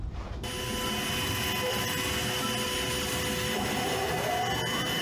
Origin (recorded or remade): recorded